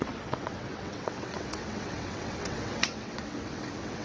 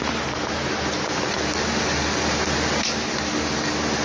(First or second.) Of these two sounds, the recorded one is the second